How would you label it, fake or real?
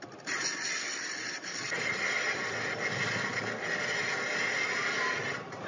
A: real